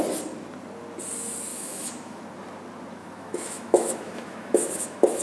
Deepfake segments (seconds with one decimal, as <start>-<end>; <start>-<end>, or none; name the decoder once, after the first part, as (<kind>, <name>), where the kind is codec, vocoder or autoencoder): 1.5-2.2 (autoencoder, DAC-VAE); 3.0-5.2